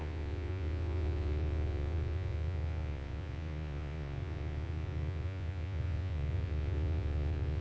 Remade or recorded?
remade